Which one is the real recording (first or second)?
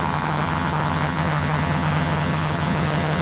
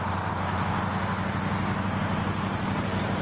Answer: second